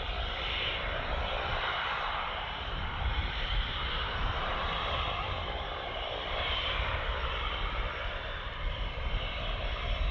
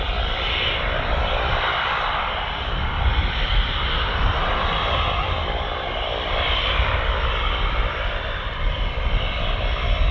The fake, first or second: first